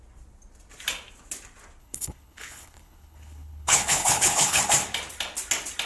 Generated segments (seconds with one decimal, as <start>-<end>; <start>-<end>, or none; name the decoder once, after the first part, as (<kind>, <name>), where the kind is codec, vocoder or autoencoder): 1.8-4.6 (codec, HILCodec)